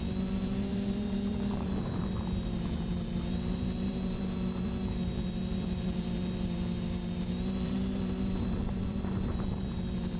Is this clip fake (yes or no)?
yes